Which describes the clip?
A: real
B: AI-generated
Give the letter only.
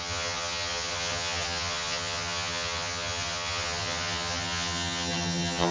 B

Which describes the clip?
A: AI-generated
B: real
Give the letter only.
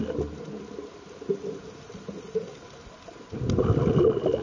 B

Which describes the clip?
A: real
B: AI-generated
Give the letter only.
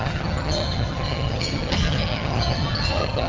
B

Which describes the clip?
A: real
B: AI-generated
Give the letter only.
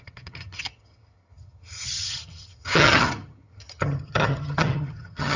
B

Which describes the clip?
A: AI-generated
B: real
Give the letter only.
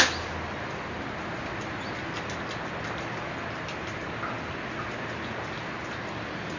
B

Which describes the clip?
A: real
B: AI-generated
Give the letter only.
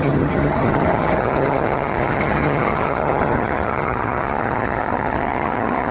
B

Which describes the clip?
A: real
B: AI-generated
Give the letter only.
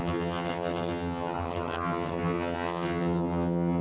B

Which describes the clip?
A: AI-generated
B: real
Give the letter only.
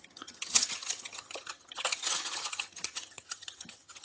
A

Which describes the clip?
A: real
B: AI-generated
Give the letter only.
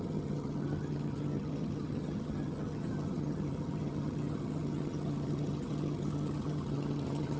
B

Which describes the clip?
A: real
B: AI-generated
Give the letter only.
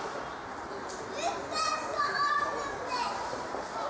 A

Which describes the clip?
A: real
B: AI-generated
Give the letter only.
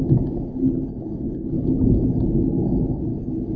A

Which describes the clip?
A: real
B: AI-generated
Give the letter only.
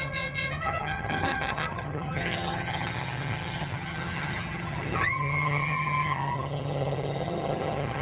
B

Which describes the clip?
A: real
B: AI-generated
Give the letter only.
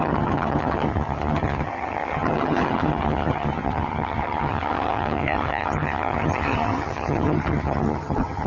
B